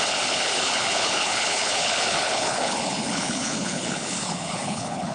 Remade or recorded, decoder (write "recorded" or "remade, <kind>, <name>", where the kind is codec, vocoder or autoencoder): remade, codec, HILCodec